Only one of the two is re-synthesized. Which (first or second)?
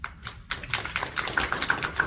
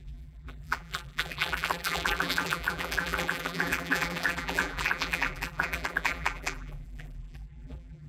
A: second